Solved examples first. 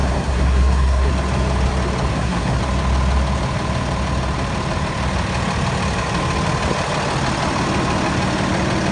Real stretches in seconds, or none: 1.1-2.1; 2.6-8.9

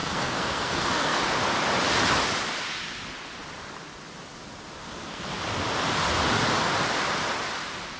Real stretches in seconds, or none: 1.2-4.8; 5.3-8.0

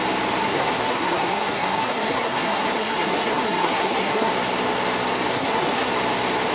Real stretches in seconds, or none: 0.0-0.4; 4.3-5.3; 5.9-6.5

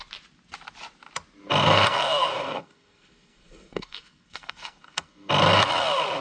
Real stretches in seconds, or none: 0.0-1.6; 5.3-6.2